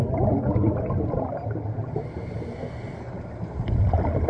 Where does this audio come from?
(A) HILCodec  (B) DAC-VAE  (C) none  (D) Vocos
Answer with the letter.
C